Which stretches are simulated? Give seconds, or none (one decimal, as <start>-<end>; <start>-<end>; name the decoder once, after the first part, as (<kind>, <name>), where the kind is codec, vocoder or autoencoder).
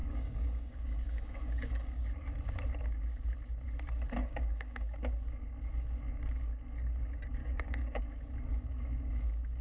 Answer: 0.0-2.0 (codec, DAC); 4.2-5.1; 7.4-8.0